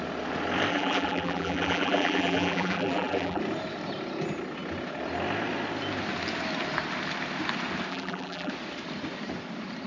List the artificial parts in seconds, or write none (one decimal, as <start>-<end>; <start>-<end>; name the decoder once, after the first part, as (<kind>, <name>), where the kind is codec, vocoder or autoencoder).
0.7-3.4 (vocoder, BigVGAN v2); 7.9-8.5